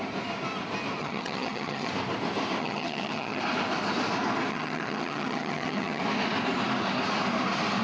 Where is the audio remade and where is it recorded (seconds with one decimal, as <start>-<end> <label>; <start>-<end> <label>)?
0.0-1.0 recorded; 1.0-1.9 remade; 1.9-2.6 recorded; 2.6-3.4 remade; 3.4-4.5 recorded; 4.5-6.0 remade; 6.0-7.8 recorded